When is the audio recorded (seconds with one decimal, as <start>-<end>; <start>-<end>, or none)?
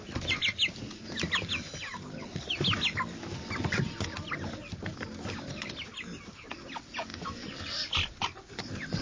0.0-9.0